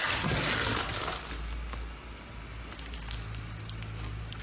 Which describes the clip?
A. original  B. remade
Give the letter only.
A